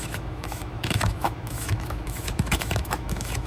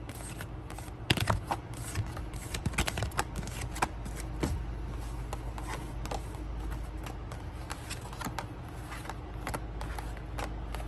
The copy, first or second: first